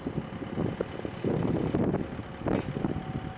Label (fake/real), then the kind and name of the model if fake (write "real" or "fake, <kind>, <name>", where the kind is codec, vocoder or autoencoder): real